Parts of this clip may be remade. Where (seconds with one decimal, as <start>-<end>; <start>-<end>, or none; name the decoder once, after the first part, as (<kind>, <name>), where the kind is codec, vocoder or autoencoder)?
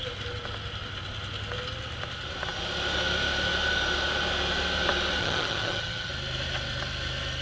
5.2-6.1 (vocoder, HiFi-GAN)